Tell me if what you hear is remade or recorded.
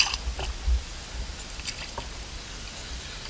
recorded